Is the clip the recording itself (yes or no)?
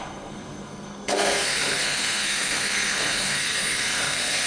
no